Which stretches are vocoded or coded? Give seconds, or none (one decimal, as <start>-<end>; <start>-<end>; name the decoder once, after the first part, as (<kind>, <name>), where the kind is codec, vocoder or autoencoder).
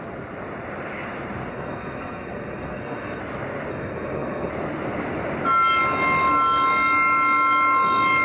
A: 1.5-3.2 (codec, SNAC); 3.7-4.5